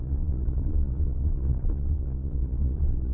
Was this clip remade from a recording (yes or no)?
yes